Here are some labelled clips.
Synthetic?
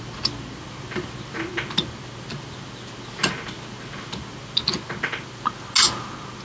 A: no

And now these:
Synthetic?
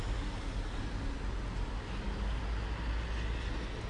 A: no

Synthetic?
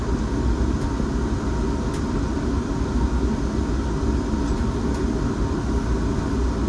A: no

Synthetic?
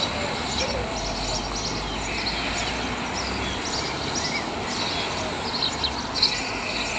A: no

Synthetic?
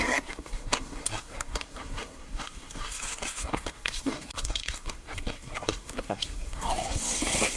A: yes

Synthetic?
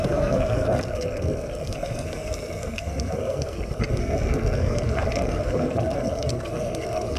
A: yes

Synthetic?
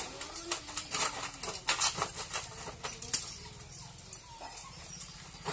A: no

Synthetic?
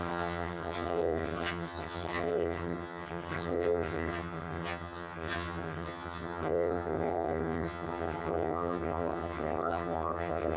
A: yes